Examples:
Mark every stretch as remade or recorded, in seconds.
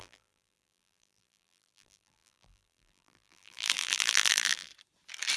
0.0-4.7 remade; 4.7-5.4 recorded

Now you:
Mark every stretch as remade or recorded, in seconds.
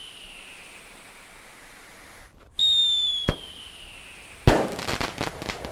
0.0-5.7 recorded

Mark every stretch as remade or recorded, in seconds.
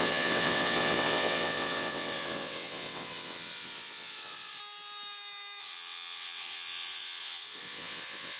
0.0-4.6 remade; 4.6-5.6 recorded; 5.6-8.4 remade